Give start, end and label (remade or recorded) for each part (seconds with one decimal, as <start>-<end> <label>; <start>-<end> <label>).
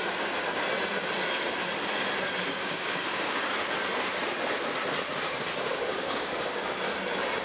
0.0-2.4 recorded; 2.4-3.5 remade; 3.5-5.7 recorded; 5.7-6.6 remade; 6.6-7.4 recorded